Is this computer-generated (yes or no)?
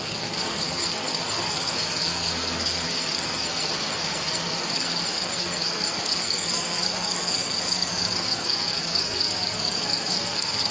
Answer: yes